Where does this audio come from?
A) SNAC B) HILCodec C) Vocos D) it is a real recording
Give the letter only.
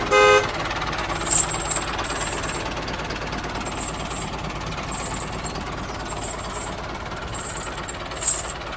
D